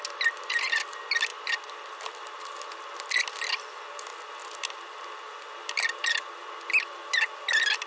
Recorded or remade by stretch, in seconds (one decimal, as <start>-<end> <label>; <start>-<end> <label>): 0.0-7.9 recorded